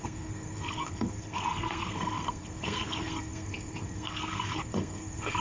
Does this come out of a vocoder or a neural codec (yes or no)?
yes